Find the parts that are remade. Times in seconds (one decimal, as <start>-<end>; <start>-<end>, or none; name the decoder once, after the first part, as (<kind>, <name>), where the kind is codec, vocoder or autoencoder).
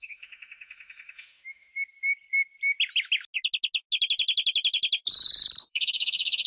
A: 0.0-1.7 (autoencoder, DAC-VAE); 5.6-6.5